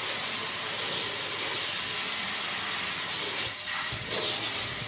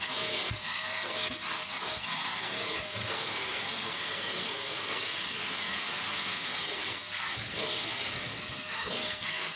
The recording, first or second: first